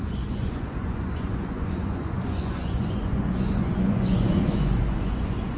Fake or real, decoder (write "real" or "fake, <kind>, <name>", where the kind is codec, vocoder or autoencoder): fake, vocoder, Vocos